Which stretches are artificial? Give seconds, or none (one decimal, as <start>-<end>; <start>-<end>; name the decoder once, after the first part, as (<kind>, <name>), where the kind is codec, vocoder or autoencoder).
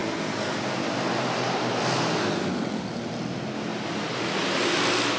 none